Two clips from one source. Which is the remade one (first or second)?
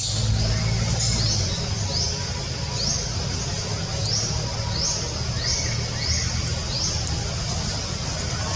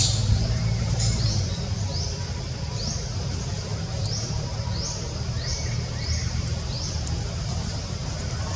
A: second